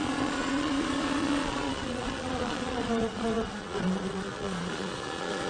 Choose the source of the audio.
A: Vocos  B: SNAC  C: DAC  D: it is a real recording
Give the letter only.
A